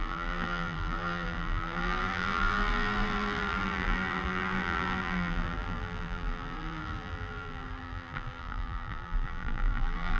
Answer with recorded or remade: remade